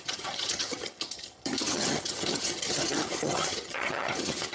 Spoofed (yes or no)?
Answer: yes